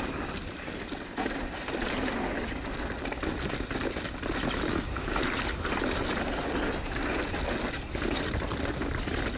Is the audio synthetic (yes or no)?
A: no